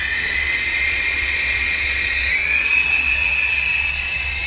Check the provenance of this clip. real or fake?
fake